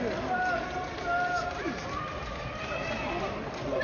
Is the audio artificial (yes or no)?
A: no